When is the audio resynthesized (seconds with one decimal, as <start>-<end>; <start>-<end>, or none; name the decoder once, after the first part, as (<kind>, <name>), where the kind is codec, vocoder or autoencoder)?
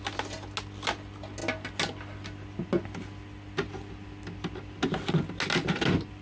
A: none